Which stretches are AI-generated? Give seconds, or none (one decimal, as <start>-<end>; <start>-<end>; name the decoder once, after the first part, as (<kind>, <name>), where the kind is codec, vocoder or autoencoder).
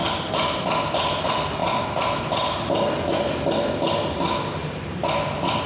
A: none